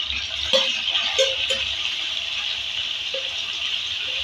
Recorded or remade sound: remade